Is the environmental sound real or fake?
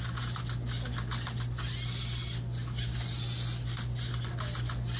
real